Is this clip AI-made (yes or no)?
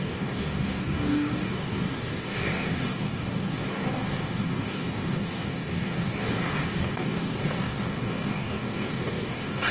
yes